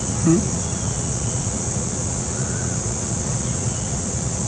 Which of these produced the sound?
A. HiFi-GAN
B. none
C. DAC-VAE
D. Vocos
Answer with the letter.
D